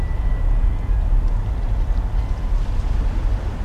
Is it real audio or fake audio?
real